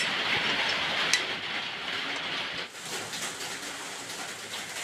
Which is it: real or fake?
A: real